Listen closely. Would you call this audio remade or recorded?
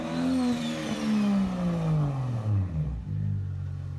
recorded